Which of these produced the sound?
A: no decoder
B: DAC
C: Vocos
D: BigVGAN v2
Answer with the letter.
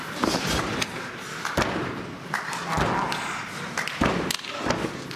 A